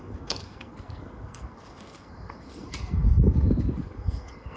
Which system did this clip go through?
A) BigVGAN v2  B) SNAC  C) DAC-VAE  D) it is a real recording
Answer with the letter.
B